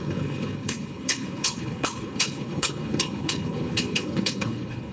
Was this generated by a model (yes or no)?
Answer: yes